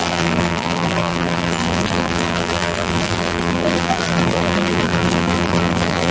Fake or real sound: fake